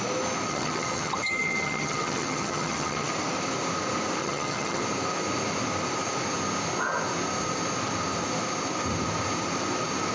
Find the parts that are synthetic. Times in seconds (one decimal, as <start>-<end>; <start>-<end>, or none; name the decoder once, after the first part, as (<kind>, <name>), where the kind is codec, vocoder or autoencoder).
0.5-3.1 (vocoder, HiFi-GAN); 4.2-4.8